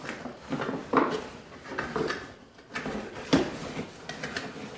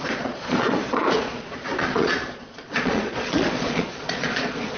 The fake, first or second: second